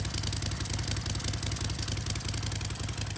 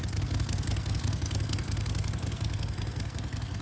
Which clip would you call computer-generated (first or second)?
second